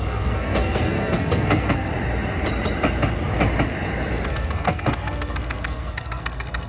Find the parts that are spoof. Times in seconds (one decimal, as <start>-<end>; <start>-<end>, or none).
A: 0.0-1.9; 4.3-6.7